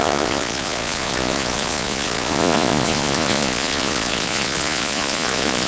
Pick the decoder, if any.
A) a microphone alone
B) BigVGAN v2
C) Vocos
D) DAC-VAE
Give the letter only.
C